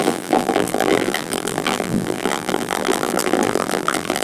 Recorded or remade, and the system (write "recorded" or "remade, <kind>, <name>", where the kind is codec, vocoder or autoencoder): remade, vocoder, BigVGAN v2